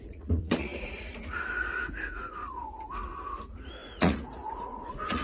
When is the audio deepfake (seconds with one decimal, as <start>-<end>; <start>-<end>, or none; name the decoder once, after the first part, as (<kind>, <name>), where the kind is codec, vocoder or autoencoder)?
0.0-2.4 (vocoder, Vocos); 3.3-5.2